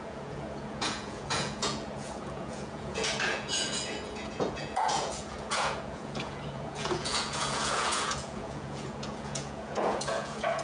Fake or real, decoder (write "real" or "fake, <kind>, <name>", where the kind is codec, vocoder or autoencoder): fake, vocoder, Vocos